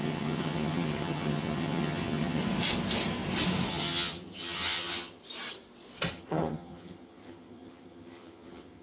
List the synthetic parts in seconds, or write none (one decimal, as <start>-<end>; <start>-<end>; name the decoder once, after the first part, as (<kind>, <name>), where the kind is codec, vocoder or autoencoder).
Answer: 0.0-2.4 (vocoder, HiFi-GAN); 3.7-5.2; 6.1-8.8